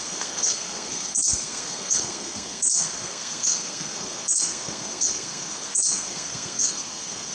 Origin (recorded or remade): remade